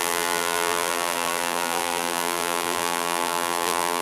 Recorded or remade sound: remade